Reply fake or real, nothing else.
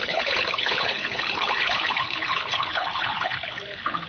fake